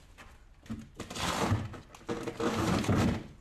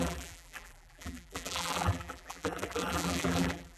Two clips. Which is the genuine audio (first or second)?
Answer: first